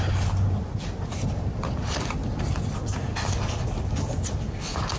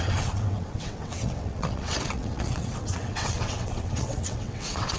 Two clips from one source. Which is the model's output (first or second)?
second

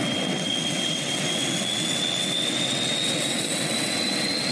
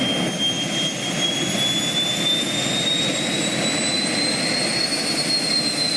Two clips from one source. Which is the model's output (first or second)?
first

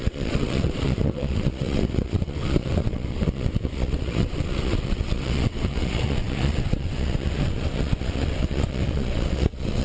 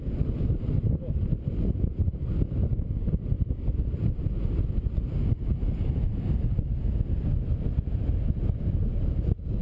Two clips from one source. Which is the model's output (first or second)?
first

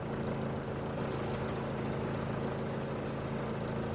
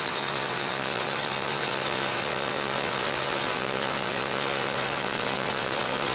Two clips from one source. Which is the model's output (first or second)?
second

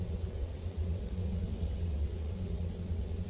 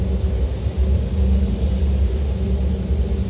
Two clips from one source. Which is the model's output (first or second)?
first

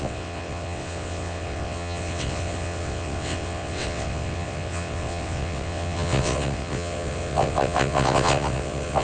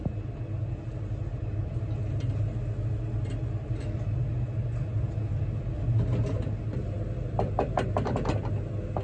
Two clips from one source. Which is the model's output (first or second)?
first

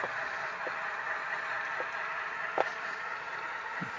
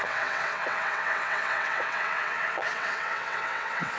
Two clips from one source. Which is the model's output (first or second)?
second